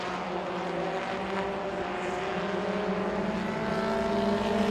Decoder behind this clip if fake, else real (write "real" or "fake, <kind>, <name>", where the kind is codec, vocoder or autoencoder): real